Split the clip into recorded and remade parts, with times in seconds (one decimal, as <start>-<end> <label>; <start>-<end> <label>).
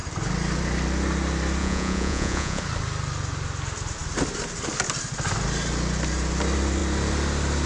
0.0-1.6 recorded; 1.6-2.6 remade; 2.6-7.7 recorded